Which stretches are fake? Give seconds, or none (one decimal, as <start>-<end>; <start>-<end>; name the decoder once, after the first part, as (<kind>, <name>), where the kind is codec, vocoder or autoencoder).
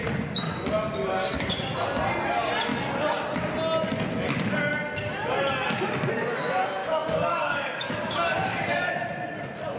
6.8-8.9 (codec, DAC)